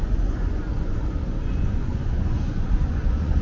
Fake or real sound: fake